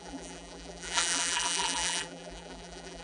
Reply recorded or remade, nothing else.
remade